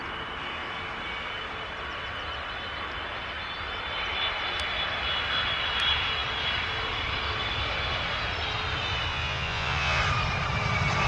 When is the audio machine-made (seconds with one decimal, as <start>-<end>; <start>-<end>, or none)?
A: 9.1-10.0